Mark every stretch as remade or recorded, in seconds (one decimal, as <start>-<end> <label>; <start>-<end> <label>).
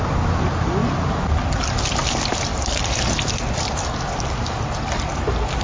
0.0-5.6 recorded